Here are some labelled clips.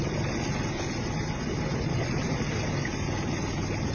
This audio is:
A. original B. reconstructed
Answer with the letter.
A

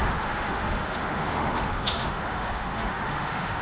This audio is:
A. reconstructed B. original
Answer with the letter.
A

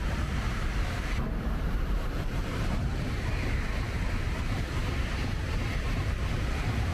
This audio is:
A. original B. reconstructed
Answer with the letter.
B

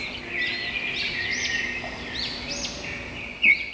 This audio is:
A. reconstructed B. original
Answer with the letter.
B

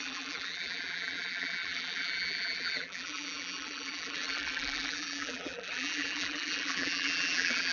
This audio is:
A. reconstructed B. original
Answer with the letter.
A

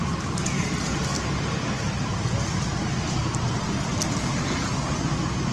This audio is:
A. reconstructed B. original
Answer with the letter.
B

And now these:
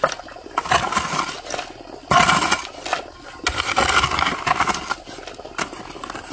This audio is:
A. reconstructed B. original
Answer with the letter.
B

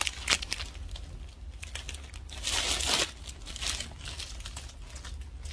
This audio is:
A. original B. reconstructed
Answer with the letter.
A